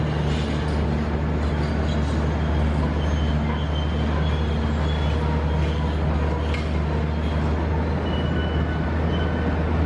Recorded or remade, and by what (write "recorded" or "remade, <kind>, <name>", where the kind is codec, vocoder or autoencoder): recorded